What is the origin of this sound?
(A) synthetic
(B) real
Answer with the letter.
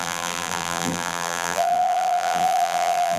A